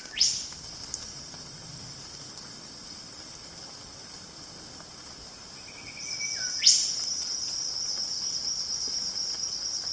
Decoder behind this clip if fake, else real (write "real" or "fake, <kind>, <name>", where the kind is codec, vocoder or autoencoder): real